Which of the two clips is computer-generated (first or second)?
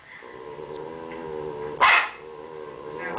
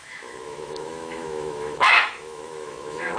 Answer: second